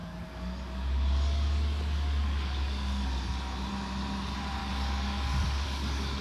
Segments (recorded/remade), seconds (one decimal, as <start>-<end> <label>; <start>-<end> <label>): 0.0-3.7 remade; 3.7-4.6 recorded; 4.6-6.2 remade